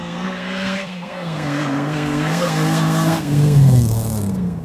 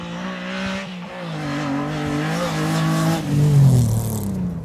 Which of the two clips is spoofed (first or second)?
first